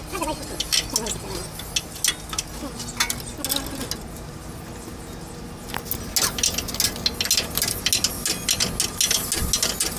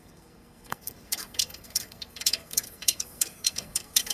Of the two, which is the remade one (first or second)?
second